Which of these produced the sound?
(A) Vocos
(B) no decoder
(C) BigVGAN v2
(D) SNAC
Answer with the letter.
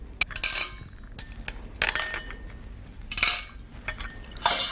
B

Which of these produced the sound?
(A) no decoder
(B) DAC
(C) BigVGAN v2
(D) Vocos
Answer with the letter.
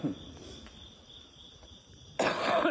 A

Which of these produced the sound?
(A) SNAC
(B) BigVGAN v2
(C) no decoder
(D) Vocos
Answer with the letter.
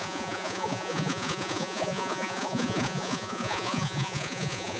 D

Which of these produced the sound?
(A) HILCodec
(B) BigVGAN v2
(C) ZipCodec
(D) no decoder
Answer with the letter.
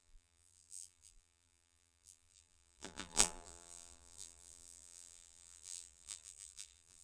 B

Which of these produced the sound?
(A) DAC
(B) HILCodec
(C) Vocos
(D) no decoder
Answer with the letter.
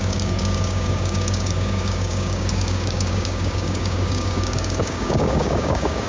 A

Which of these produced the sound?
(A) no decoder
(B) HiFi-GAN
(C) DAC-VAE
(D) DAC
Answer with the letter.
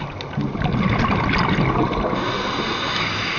A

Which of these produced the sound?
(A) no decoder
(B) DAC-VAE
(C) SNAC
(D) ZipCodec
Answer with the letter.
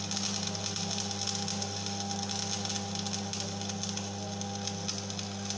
A